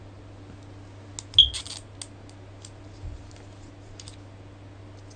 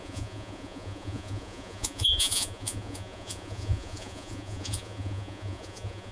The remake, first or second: second